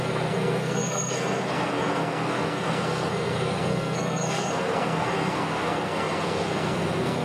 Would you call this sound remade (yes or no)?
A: yes